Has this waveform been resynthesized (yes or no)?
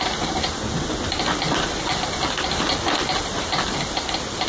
no